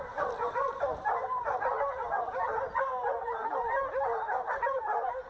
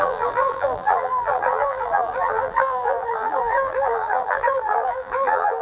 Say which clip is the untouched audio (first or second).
first